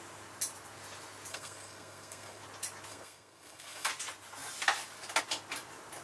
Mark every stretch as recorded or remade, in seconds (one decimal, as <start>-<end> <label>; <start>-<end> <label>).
0.0-1.3 recorded; 1.3-2.4 remade; 2.4-2.9 recorded; 2.9-3.9 remade; 3.9-6.0 recorded